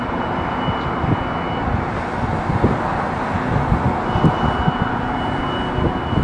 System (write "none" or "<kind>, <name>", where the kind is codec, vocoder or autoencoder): none